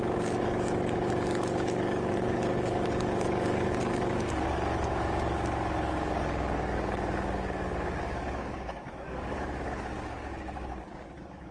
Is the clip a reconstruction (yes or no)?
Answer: yes